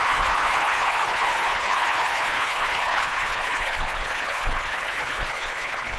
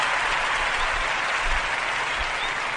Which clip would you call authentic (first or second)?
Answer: second